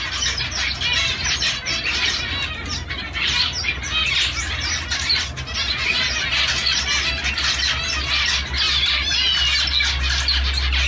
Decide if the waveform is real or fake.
real